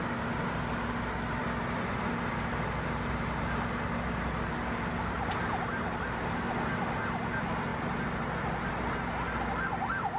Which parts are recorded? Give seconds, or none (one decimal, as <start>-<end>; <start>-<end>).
0.0-10.2